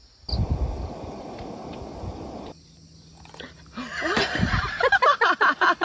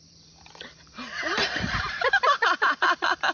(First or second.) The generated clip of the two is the second